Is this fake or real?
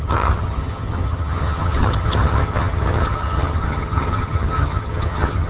fake